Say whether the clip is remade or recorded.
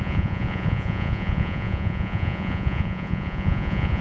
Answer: remade